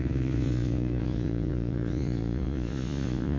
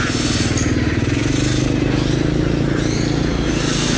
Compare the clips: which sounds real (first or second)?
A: second